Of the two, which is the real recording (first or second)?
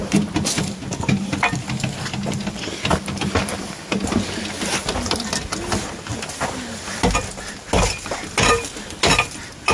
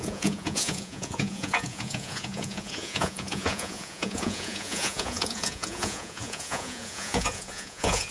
first